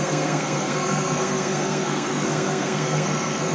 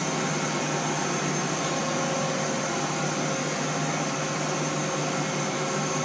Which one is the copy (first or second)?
first